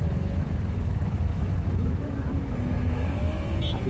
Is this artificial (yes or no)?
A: yes